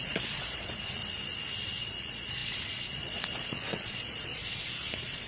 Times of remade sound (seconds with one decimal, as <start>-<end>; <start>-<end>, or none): 0.0-1.0; 1.7-5.3